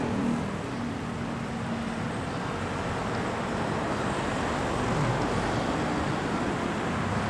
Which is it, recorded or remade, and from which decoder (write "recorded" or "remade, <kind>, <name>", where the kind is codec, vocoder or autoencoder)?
recorded